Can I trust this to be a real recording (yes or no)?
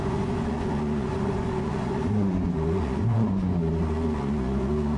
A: no